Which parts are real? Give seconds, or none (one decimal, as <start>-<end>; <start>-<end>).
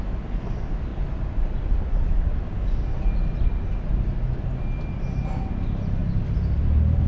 0.0-7.1